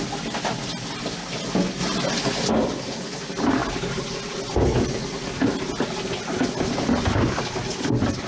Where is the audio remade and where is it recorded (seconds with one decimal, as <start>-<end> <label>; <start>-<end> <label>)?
0.0-8.3 recorded